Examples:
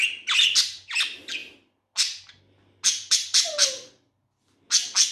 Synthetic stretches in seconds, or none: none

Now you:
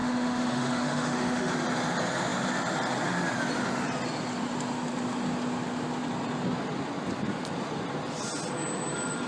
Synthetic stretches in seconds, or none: 0.0-1.5 (autoencoder, DAC-VAE)

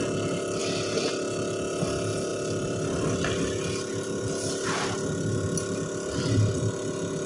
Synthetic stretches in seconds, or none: 0.6-1.1 (vocoder, BigVGAN v2); 2.3-6.7